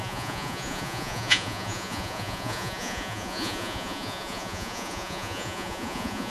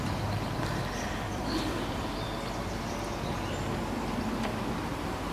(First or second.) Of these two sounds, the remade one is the first